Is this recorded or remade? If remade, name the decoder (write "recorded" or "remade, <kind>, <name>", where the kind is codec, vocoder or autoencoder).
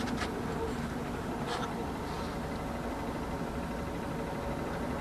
recorded